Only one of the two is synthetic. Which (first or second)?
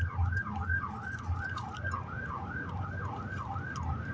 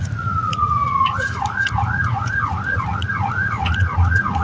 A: second